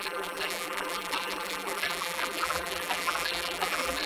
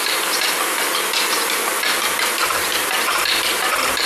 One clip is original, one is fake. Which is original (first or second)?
second